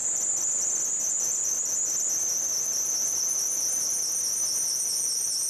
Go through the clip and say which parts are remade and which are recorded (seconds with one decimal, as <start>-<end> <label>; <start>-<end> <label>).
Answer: 0.0-0.7 recorded; 0.7-1.6 remade; 1.6-4.9 recorded; 4.9-5.5 remade